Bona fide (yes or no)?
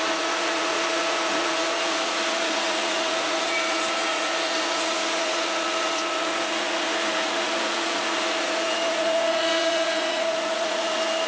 no